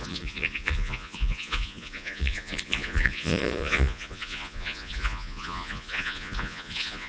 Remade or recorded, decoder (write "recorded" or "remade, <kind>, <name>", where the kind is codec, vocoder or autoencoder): remade, vocoder, Vocos